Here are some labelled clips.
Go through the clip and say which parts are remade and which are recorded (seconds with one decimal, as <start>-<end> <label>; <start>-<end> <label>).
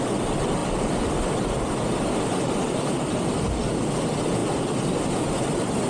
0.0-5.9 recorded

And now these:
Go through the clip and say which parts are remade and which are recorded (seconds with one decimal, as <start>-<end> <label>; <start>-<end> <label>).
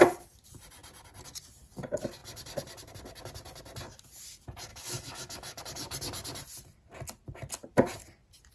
0.0-4.7 recorded; 4.7-5.6 remade; 5.6-8.5 recorded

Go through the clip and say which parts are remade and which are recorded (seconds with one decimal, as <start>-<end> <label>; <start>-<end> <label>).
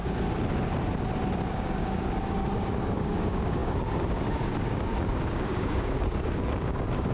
0.0-1.4 recorded; 1.4-7.1 remade